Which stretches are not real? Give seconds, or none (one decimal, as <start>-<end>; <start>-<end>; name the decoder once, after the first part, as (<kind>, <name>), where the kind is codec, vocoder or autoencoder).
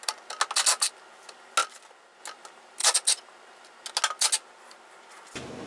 none